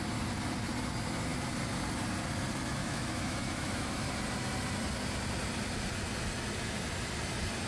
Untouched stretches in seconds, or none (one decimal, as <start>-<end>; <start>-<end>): 0.0-2.8; 4.1-7.7